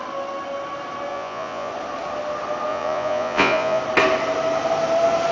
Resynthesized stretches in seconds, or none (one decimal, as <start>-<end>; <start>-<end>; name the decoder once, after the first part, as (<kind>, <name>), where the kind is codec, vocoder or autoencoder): 1.1-1.7 (vocoder, Vocos); 2.7-3.8